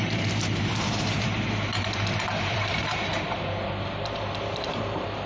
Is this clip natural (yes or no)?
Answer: no